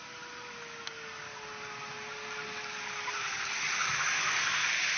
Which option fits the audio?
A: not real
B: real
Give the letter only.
B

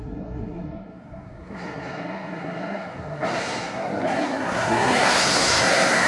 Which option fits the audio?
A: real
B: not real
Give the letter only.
B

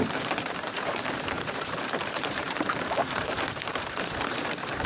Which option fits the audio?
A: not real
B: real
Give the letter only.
A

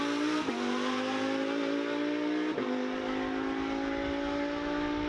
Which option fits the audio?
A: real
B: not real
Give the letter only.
A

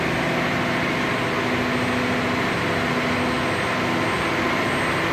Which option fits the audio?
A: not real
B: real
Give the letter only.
B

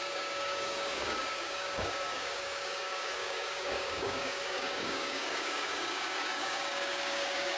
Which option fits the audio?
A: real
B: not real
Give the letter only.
B